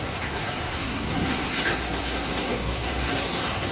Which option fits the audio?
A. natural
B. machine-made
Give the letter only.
B